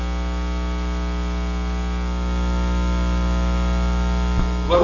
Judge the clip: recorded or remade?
recorded